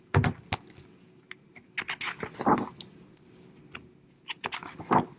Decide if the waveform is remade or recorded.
recorded